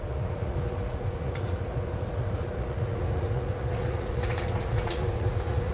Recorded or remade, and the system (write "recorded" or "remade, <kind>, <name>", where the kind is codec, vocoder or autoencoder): remade, vocoder, Vocos